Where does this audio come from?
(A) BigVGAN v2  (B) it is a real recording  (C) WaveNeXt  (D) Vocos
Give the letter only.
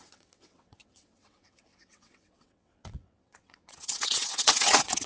C